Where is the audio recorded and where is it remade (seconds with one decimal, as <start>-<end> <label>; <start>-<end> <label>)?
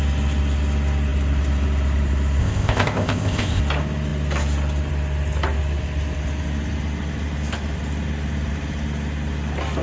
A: 0.0-2.4 recorded; 2.4-3.6 remade; 3.6-9.8 recorded